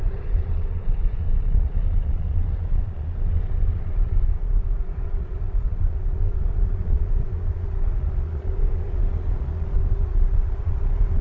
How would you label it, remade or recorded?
remade